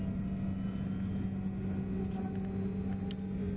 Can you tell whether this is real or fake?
real